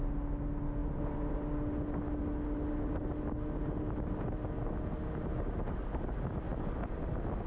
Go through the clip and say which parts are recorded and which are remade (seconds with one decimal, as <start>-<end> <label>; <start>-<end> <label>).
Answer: 0.0-7.5 recorded